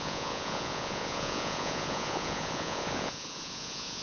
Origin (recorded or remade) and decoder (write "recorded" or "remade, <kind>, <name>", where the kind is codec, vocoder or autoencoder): remade, vocoder, Vocos